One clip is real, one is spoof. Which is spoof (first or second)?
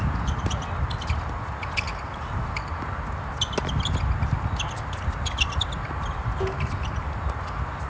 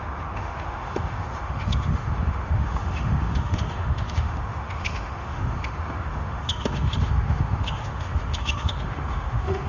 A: second